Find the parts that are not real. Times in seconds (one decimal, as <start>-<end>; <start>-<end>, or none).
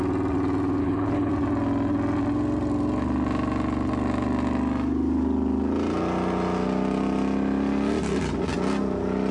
0.8-1.3